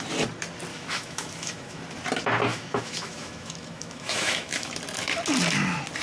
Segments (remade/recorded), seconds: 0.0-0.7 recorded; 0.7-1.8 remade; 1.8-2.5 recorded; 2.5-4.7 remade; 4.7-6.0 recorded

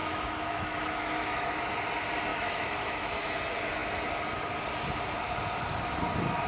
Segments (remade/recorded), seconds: 0.0-1.7 remade; 1.7-2.3 recorded; 2.3-3.4 remade; 3.4-6.5 recorded

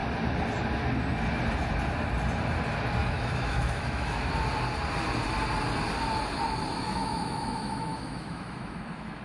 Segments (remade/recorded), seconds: 0.0-3.0 recorded; 3.0-4.3 remade; 4.3-6.7 recorded; 6.7-9.2 remade

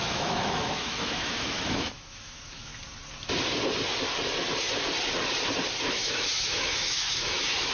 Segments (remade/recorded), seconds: 0.0-2.7 remade; 2.7-5.9 recorded; 5.9-7.7 remade